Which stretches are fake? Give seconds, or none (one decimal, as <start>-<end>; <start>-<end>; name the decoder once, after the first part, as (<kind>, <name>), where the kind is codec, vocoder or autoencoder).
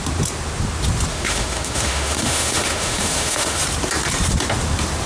1.1-3.6 (autoencoder, DAC-VAE)